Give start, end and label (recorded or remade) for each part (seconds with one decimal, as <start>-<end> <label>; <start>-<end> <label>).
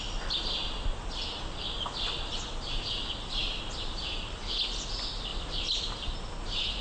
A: 0.0-5.3 recorded; 5.3-6.1 remade; 6.1-6.8 recorded